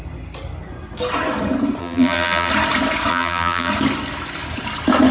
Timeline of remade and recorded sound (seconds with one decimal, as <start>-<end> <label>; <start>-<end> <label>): 0.0-1.8 recorded; 1.8-2.5 remade; 2.5-3.1 recorded; 3.1-3.7 remade; 3.7-5.1 recorded